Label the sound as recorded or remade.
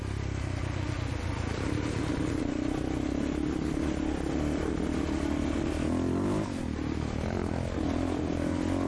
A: recorded